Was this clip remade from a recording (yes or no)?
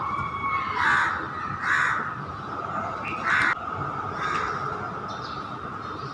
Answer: no